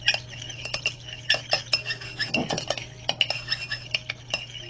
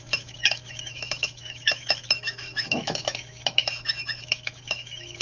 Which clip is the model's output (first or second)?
second